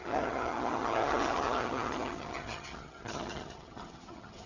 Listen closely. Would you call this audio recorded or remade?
remade